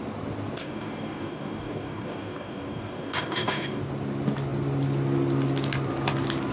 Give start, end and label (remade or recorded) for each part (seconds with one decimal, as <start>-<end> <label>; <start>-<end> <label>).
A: 0.0-0.6 recorded; 0.6-3.8 remade; 3.8-6.5 recorded